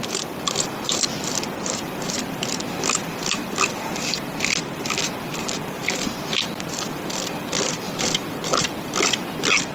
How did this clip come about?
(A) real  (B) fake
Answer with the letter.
B